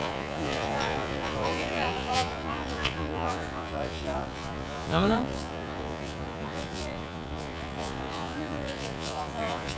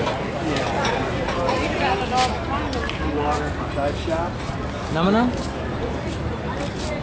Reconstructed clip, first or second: first